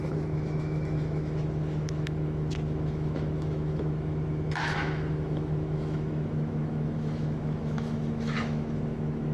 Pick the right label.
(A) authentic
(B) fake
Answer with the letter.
B